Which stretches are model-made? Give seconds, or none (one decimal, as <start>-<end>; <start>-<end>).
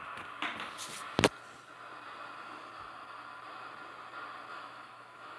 4.5-5.4